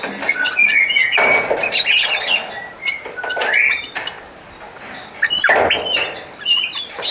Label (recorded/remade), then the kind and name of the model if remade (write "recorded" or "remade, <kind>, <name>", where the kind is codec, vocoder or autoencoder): recorded